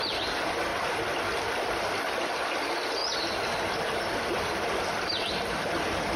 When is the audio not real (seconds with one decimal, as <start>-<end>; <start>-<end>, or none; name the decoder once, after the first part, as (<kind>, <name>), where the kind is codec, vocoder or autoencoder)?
0.0-0.7 (vocoder, BigVGAN v2); 1.5-3.0